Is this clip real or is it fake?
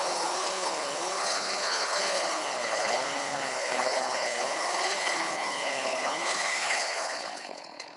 fake